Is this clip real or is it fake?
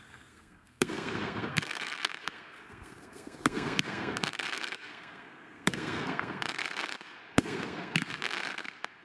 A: fake